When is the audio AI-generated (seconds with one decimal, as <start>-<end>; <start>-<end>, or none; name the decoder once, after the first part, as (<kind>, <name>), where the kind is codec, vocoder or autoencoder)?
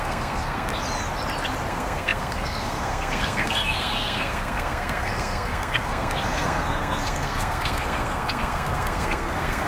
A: 0.0-0.7 (codec, SNAC); 1.7-9.7